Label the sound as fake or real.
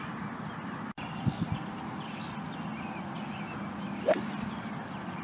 real